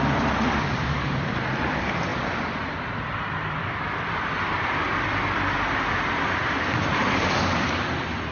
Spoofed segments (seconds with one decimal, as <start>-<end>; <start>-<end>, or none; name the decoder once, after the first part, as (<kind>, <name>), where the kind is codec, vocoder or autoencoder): 0.0-2.1 (vocoder, BigVGAN v2); 2.9-8.3